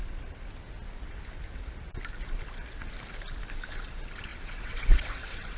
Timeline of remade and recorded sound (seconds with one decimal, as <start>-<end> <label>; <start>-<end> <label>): 0.0-4.3 recorded; 4.3-5.6 remade

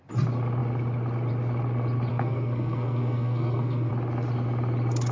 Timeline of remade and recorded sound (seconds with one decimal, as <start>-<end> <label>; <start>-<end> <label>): 0.0-2.1 recorded; 2.1-3.9 remade; 3.9-5.1 recorded

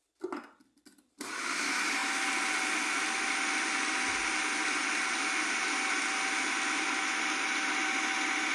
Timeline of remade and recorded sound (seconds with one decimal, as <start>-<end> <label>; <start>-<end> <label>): 0.0-8.5 recorded

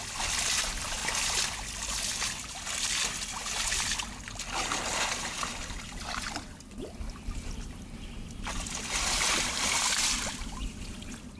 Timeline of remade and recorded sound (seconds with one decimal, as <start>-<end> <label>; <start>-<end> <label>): 0.0-11.4 recorded

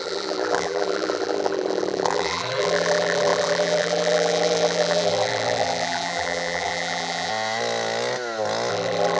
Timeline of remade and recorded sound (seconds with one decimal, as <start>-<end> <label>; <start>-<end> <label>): 0.0-7.3 remade; 7.3-8.7 recorded; 8.7-9.2 remade

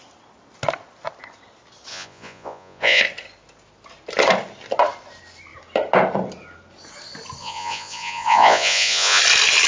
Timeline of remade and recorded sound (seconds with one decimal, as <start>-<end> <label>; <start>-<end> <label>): 0.0-1.9 recorded; 1.9-3.0 remade; 3.0-7.4 recorded; 7.4-9.2 remade; 9.2-9.7 recorded

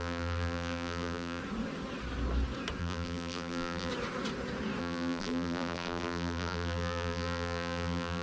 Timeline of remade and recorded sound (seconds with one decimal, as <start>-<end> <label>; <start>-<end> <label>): 0.0-1.4 remade; 1.4-2.8 recorded; 2.8-3.9 remade; 3.9-4.8 recorded; 4.8-8.2 remade